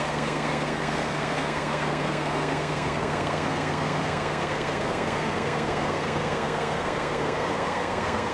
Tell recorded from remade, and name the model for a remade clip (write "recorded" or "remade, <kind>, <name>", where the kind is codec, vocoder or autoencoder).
remade, codec, SNAC